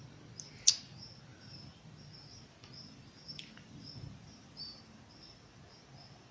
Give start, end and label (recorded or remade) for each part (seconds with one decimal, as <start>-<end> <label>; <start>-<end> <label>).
0.0-1.3 recorded; 1.3-5.1 remade; 5.1-6.3 recorded